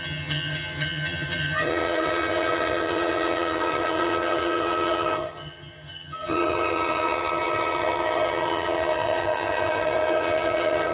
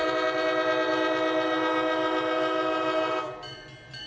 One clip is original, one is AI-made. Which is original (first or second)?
second